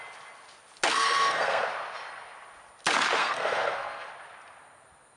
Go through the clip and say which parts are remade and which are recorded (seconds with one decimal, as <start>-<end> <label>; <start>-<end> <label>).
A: 0.0-0.9 recorded; 0.9-1.7 remade; 1.7-3.2 recorded; 3.2-4.1 remade; 4.1-5.2 recorded